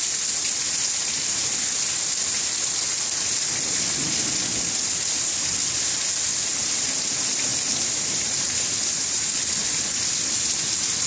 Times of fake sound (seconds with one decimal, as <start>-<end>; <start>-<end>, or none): none